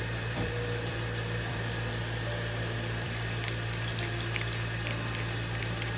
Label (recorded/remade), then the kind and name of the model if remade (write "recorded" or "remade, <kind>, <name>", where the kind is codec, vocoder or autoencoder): remade, vocoder, BigVGAN v2